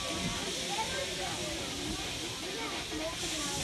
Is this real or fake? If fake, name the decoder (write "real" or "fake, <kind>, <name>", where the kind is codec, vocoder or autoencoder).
real